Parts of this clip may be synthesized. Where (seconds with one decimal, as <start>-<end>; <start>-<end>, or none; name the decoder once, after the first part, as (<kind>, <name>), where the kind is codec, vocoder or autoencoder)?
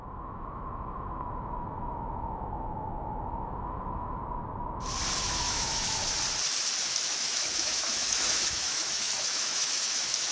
0.0-4.2 (autoencoder, DAC-VAE); 5.2-6.0; 6.8-10.3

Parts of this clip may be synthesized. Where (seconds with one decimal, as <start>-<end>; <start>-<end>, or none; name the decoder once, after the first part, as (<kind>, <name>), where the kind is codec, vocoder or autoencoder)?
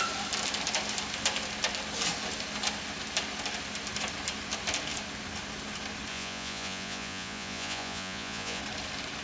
6.1-8.6 (vocoder, Vocos)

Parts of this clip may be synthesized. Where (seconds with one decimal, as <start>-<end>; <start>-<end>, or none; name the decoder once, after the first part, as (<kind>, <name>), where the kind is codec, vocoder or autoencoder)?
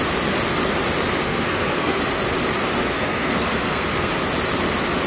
1.2-2.0 (codec, SNAC); 2.9-4.1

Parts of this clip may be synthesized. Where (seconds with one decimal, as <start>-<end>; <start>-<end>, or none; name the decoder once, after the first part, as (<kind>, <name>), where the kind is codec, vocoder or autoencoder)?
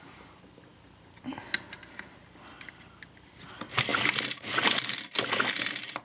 none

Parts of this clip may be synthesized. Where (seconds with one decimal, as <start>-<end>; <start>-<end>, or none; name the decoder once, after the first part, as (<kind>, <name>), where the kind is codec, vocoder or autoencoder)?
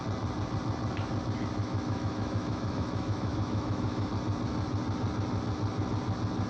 1.6-4.1 (autoencoder, DAC-VAE)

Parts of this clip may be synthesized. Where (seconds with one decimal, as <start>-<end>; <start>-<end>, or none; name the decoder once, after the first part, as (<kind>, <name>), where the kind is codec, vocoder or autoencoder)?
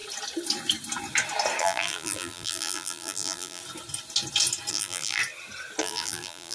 1.6-3.6 (vocoder, BigVGAN v2); 4.7-5.2; 5.8-6.5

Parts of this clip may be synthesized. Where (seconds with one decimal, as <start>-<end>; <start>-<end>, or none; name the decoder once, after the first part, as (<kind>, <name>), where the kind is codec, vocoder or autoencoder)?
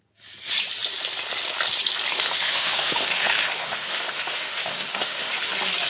2.1-5.5 (autoencoder, DAC-VAE)